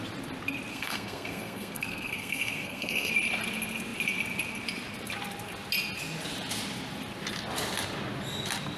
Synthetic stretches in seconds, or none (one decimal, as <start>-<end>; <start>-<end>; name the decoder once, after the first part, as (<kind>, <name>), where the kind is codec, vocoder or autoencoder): 0.7-3.1 (codec, SNAC)